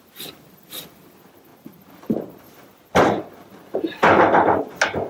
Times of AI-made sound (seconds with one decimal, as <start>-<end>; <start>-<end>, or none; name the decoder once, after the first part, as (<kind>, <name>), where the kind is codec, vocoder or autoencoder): none

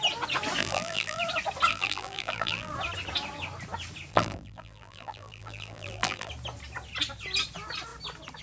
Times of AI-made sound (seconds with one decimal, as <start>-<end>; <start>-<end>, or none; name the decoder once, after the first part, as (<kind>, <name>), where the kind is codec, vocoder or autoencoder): 0.6-1.2 (vocoder, BigVGAN v2); 1.7-2.7; 4.1-6.3

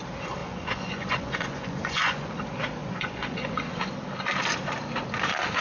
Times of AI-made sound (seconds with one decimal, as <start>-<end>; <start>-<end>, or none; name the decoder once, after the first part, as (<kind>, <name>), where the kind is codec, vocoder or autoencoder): 0.4-2.3 (vocoder, Vocos); 2.8-3.9

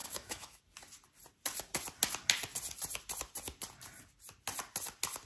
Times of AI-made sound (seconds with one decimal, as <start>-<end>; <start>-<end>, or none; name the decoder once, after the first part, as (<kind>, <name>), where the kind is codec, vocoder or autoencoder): 0.0-0.6 (autoencoder, DAC-VAE)

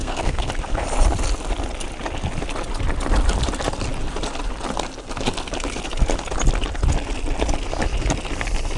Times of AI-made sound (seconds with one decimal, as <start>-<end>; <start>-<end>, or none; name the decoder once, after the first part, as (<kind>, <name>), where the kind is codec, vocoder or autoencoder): 0.0-0.5 (codec, SNAC)

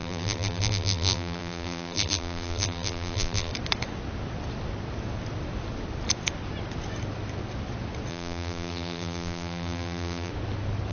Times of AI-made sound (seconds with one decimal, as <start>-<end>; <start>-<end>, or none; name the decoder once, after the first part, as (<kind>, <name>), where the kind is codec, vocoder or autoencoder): 0.0-3.5 (vocoder, BigVGAN v2); 8.1-10.3